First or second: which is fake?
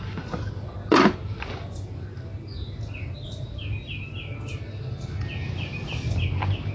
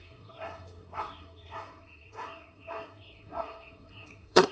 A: second